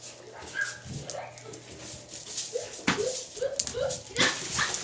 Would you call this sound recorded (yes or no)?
yes